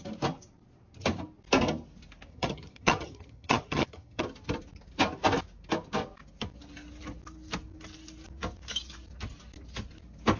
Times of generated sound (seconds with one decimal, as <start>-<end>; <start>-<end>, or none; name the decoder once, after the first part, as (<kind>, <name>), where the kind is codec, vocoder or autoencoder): 2.3-4.2 (vocoder, HiFi-GAN)

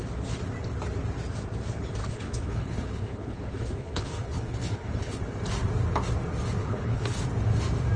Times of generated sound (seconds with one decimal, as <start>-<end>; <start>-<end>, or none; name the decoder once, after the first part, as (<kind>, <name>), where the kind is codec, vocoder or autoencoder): 2.0-5.2 (codec, HILCodec); 6.6-7.2

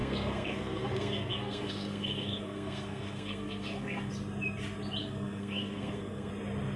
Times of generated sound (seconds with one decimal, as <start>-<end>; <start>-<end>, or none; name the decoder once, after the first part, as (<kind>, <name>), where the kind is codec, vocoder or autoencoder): 0.0-4.1 (codec, SNAC); 5.0-6.3

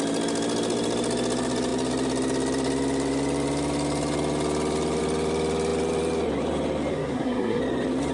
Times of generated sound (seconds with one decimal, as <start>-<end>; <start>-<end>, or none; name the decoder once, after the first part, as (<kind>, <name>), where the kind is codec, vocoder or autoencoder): 6.9-7.6 (codec, SNAC)

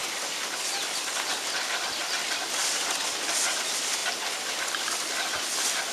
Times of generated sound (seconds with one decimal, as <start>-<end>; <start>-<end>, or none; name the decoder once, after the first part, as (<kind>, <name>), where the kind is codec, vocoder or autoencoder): none